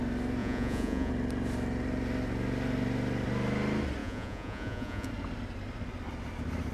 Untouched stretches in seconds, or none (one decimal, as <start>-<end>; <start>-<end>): 0.0-0.4; 1.1-4.0; 5.1-6.7